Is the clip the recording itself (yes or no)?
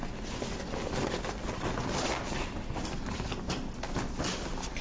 yes